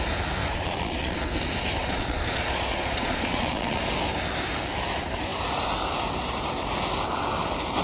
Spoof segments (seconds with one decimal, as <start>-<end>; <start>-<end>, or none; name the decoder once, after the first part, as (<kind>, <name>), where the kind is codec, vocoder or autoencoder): 0.4-1.2 (vocoder, Vocos); 1.8-3.8